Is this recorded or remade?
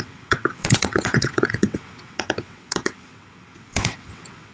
remade